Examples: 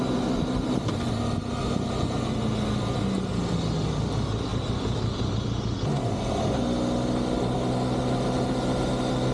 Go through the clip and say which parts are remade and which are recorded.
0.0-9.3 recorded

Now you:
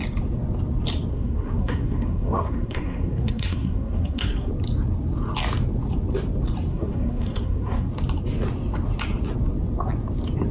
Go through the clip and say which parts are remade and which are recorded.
0.0-1.1 recorded; 1.1-4.5 remade; 4.5-6.7 recorded; 6.7-7.9 remade; 7.9-10.5 recorded

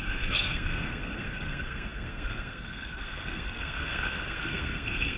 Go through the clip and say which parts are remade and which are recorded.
0.0-5.2 remade

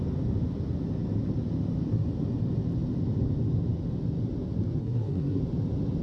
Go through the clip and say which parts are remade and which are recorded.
0.0-4.8 recorded; 4.8-5.4 remade; 5.4-6.0 recorded

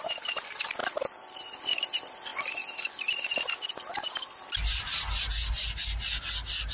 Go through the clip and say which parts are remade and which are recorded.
0.0-6.7 recorded

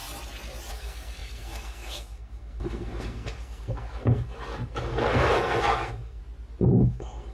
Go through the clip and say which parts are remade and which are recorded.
0.0-0.7 recorded; 0.7-6.2 remade; 6.2-6.7 recorded; 6.7-7.3 remade